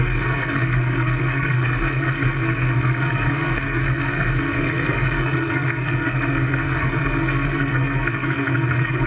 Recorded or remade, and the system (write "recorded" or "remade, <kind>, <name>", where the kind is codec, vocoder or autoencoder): remade, codec, SNAC